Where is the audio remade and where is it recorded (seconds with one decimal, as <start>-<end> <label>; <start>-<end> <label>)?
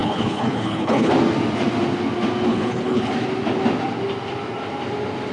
0.0-1.1 remade; 1.1-2.5 recorded; 2.5-3.1 remade; 3.1-5.3 recorded